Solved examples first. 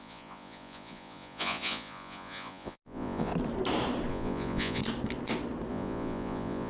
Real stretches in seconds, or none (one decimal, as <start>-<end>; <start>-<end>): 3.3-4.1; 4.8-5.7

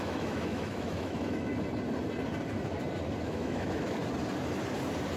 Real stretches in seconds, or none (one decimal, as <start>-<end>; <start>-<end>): 1.5-3.2; 4.0-5.2

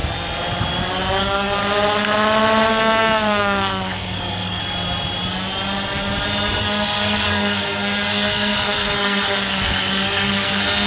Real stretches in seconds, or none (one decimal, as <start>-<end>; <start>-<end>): 0.0-1.2; 1.6-2.7; 4.6-6.6

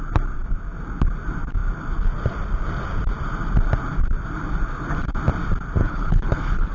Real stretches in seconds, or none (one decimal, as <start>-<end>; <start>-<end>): 0.0-5.8

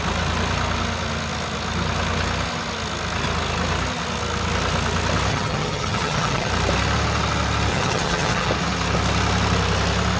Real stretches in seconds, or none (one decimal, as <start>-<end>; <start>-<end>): 0.0-5.3; 6.5-7.7; 8.5-10.2

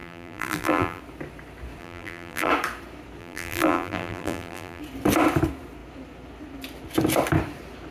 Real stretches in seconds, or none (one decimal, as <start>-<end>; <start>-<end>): 1.0-1.8; 2.5-3.2; 4.8-7.9